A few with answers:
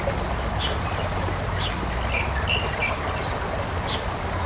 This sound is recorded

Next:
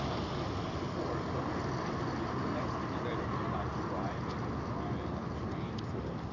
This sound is recorded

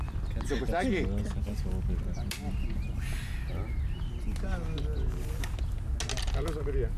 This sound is recorded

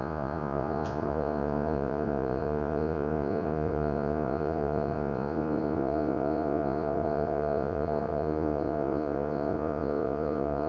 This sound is remade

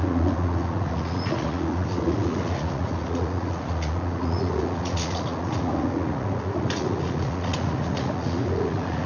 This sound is remade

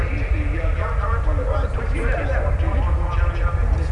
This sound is recorded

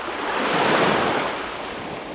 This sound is recorded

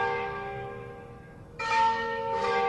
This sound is remade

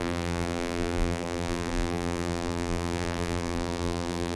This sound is remade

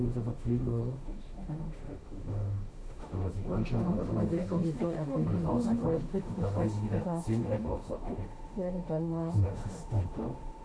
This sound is remade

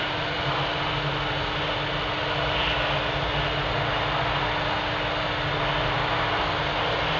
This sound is recorded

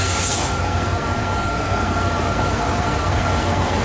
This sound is remade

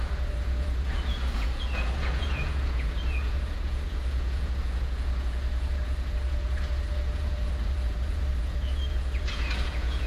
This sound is remade